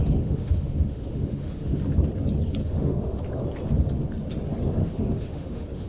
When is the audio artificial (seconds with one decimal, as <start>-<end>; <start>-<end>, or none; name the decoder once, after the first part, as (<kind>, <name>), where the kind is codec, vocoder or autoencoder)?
0.0-1.8 (autoencoder, DAC-VAE); 2.6-3.2; 4.8-5.9